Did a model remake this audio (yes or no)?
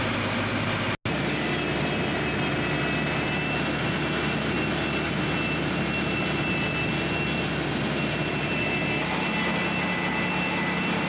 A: no